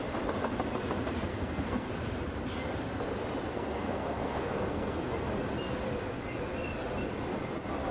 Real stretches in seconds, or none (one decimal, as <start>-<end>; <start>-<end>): 0.0-1.3; 1.9-3.5; 5.1-7.9